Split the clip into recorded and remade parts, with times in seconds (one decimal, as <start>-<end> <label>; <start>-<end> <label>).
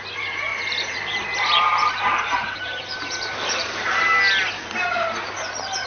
0.0-0.5 recorded; 0.5-4.0 remade; 4.0-5.9 recorded